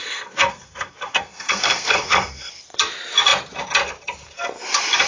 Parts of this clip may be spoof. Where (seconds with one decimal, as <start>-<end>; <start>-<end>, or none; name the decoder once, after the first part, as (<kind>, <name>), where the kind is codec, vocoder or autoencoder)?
0.0-2.5 (codec, SNAC)